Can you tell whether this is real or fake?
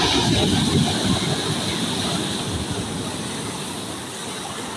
real